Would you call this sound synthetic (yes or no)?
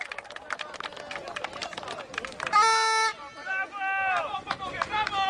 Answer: no